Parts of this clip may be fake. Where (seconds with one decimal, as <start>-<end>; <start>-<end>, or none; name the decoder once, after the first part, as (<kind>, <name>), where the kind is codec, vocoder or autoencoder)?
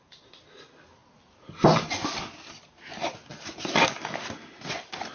none